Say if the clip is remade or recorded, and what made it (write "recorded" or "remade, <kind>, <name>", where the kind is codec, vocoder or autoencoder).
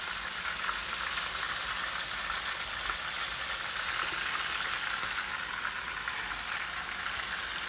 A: recorded